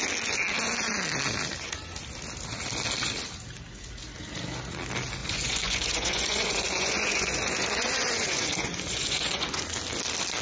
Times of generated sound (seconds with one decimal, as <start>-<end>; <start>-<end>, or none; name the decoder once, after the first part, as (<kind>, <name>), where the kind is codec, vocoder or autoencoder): 5.2-9.6 (vocoder, Vocos)